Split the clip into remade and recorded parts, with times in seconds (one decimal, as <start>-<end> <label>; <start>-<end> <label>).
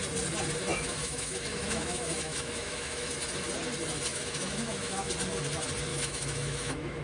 0.0-0.7 recorded; 0.7-3.1 remade; 3.1-4.1 recorded; 4.1-5.1 remade; 5.1-5.9 recorded; 5.9-7.0 remade